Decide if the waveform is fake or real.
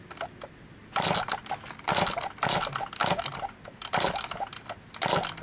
real